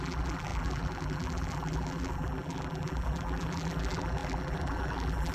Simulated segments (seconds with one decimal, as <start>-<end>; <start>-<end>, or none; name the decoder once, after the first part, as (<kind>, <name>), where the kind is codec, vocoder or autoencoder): 0.0-5.3 (vocoder, BigVGAN v2)